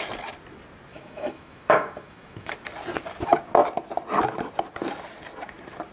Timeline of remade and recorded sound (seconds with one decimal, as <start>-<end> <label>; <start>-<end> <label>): 0.0-0.9 recorded; 0.9-2.5 remade; 2.5-5.9 recorded